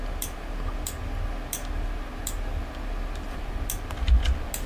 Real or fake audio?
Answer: real